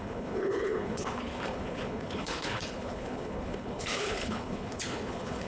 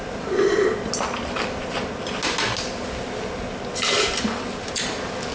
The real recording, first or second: second